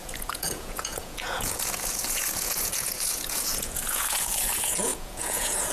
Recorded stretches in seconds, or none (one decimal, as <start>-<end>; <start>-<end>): none